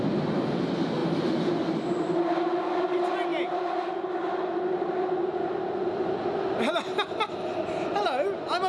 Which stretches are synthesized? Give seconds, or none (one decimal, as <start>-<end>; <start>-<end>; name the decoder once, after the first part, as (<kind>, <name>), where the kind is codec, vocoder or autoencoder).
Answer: none